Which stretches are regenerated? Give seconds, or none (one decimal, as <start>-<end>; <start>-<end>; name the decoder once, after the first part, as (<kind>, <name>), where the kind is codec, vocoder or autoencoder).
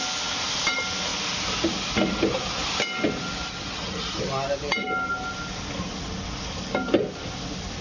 none